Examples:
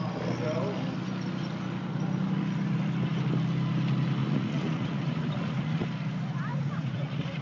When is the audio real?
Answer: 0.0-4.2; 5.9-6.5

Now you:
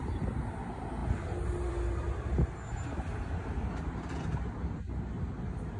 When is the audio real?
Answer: 0.0-5.8

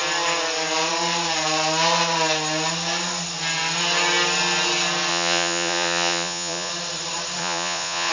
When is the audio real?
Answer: 0.0-5.1; 6.7-7.4

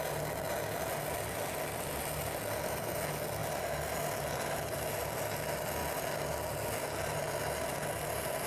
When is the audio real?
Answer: 0.0-8.5

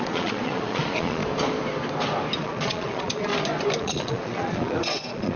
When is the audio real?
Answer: 1.2-2.4; 3.3-3.8